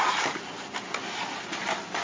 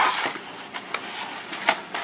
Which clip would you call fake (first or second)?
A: second